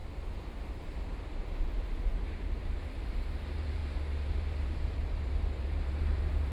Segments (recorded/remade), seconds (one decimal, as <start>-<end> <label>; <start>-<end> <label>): 0.0-2.3 recorded; 2.3-3.8 remade; 3.8-4.3 recorded; 4.3-6.5 remade